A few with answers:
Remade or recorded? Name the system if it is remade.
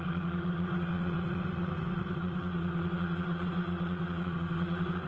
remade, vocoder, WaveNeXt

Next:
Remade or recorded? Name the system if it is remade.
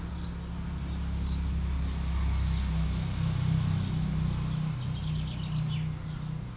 recorded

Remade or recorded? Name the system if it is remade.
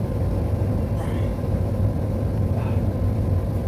recorded